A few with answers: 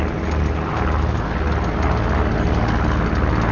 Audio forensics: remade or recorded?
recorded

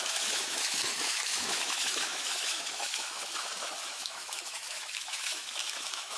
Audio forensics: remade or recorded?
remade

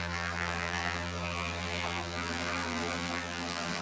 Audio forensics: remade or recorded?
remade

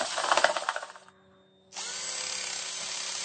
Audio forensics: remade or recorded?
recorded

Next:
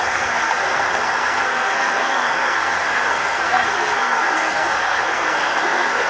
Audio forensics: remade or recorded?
remade